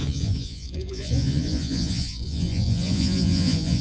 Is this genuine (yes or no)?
no